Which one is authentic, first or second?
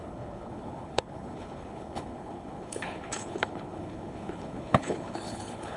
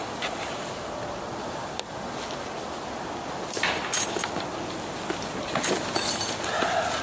second